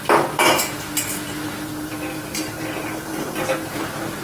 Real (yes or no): yes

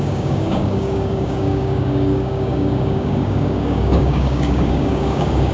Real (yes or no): no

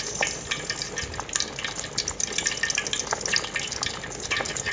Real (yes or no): yes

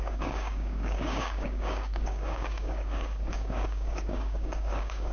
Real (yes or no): no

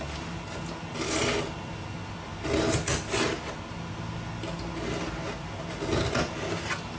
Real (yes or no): yes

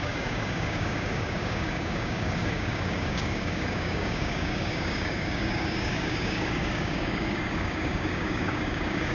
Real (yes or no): no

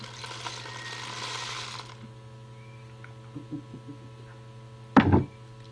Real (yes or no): yes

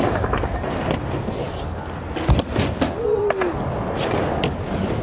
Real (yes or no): yes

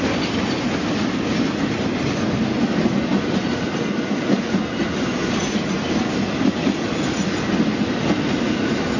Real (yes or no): yes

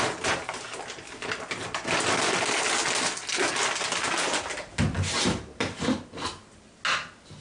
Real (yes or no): yes